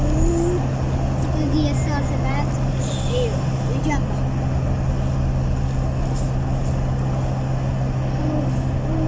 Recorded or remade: recorded